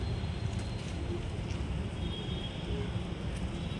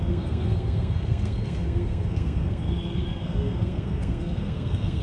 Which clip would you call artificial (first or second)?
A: second